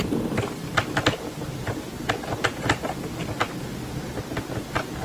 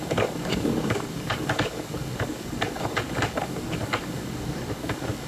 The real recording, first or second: first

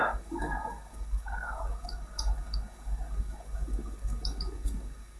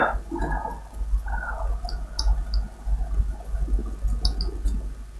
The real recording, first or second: second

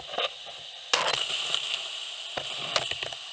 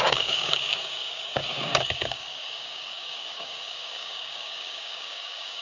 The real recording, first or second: first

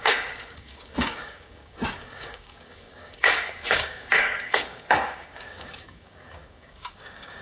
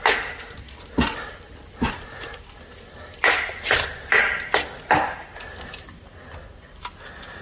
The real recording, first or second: second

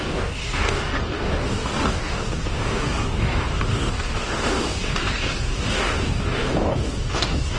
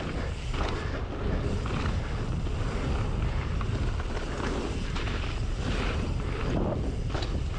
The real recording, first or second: second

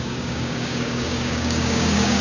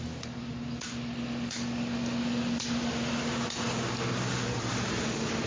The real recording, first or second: second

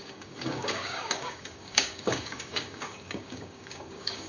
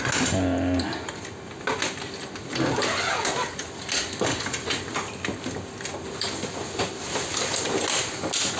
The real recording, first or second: second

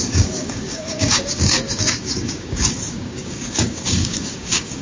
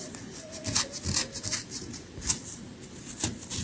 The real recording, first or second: second